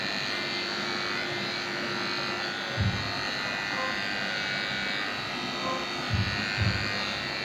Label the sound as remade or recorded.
recorded